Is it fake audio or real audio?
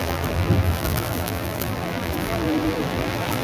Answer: fake